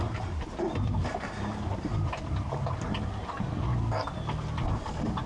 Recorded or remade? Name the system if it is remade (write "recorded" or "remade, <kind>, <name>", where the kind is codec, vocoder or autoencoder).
recorded